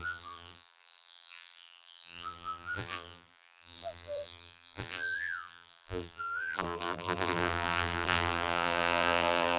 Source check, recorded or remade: remade